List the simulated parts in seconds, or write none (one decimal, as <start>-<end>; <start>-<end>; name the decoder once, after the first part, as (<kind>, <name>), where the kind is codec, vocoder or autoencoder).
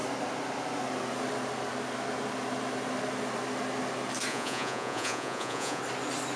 4.3-5.8 (vocoder, Vocos)